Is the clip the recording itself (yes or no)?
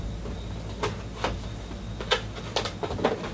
yes